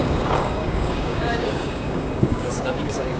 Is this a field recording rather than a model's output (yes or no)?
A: no